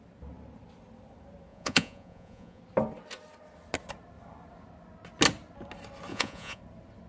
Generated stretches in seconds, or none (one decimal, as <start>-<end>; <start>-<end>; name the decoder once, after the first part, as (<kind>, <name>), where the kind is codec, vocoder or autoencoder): 1.5-2.6 (vocoder, Vocos); 6.1-6.6